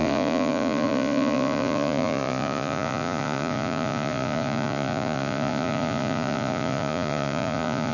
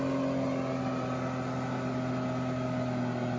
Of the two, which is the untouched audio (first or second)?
second